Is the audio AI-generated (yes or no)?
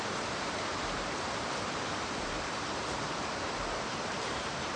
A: yes